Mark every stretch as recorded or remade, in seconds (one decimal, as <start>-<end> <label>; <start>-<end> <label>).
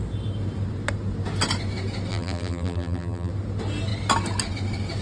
0.0-2.1 recorded; 2.1-3.3 remade; 3.3-5.0 recorded